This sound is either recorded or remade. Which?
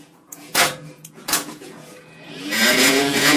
remade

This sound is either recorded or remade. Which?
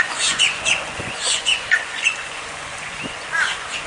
remade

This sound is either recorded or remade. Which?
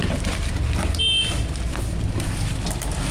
remade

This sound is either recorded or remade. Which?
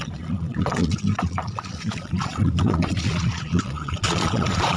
remade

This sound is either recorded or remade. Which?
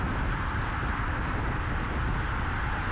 recorded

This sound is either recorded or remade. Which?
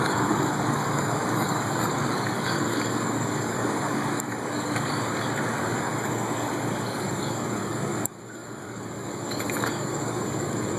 remade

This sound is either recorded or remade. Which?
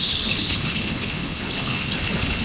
remade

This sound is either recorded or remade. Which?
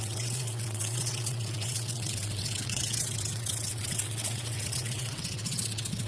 remade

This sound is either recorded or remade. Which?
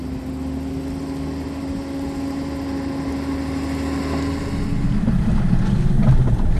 recorded